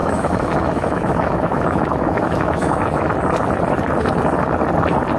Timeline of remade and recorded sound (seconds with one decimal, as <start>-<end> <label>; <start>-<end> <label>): 0.0-3.1 remade; 3.1-5.2 recorded